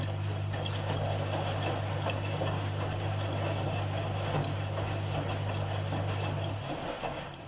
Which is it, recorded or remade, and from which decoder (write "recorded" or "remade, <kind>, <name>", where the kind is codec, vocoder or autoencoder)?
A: recorded